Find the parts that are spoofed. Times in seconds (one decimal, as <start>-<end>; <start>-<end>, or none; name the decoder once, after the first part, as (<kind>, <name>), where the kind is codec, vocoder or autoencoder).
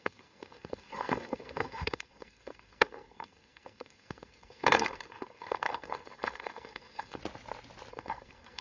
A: 0.0-7.2 (codec, SNAC); 7.9-8.6